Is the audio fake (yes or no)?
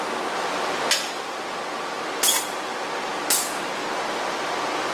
no